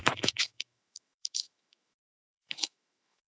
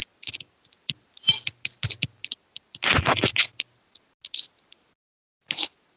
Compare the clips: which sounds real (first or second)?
second